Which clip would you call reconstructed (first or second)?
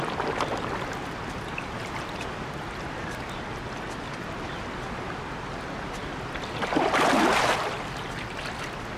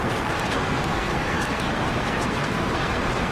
second